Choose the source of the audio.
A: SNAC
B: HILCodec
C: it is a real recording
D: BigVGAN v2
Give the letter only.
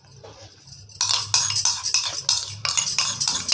C